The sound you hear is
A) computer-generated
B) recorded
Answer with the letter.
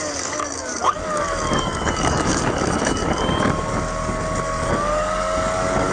A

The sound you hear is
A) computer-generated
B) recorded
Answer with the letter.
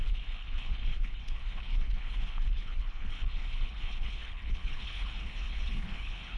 A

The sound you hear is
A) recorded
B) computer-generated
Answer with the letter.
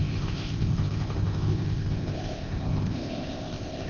B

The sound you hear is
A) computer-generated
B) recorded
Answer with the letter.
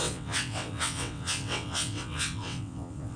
A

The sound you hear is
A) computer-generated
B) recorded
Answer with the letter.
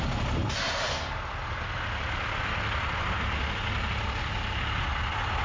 B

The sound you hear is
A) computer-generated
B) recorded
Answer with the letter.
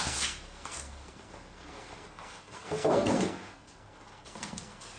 A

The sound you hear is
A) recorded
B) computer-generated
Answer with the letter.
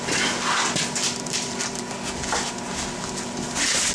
A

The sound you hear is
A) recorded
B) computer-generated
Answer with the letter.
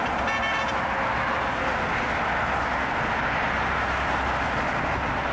A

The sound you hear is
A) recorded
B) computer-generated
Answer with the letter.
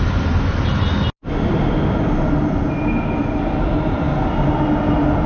A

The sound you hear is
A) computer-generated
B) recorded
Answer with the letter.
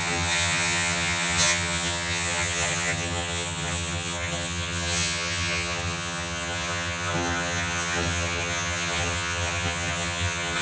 A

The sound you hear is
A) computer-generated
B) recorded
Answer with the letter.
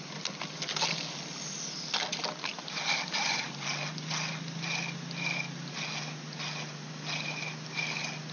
B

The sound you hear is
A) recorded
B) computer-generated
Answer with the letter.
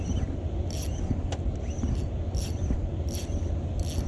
A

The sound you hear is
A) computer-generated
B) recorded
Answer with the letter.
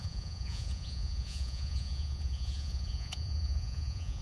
A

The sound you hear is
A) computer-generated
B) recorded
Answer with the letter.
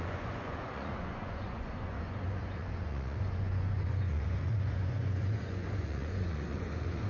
A